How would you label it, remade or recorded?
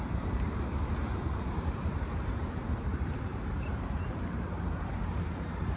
remade